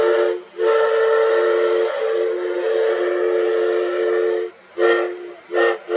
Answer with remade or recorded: recorded